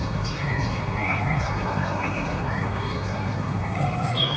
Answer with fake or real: fake